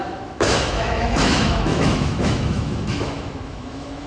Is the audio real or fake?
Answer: fake